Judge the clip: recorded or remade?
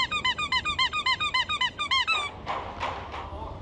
recorded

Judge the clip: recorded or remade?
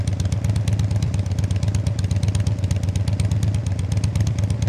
recorded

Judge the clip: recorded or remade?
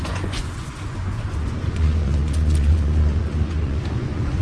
remade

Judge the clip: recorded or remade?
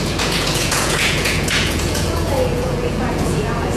remade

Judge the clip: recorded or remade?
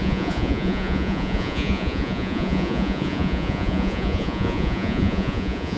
remade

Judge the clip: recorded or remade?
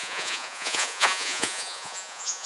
remade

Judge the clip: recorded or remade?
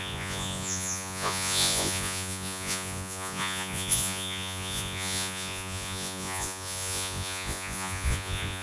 remade